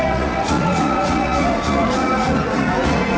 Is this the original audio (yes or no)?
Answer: no